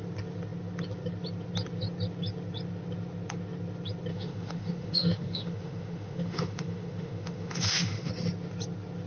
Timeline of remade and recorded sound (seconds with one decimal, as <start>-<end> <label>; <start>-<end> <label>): 0.0-4.1 recorded; 4.1-8.1 remade; 8.1-9.1 recorded

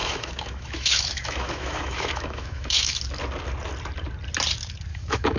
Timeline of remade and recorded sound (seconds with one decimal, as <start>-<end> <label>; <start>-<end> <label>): 0.0-3.0 remade; 3.0-4.9 recorded; 4.9-5.4 remade

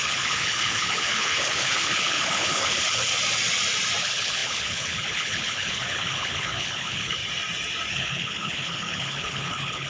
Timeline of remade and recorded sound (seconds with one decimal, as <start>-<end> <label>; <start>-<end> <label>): 0.0-3.1 remade; 3.1-4.0 recorded; 4.0-7.2 remade; 7.2-7.9 recorded; 7.9-9.9 remade